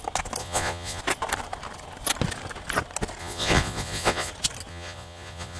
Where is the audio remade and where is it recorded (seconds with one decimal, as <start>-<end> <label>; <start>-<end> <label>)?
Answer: 0.0-0.4 recorded; 0.4-1.0 remade; 1.0-3.2 recorded; 3.2-4.3 remade; 4.3-4.7 recorded; 4.7-5.6 remade